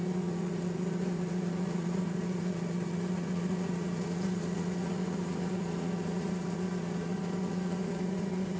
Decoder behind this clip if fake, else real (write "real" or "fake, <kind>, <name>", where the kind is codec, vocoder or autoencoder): fake, vocoder, Vocos